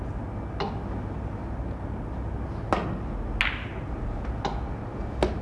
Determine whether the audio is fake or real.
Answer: real